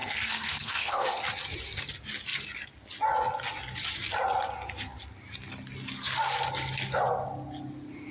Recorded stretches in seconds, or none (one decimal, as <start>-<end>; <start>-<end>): 1.2-8.1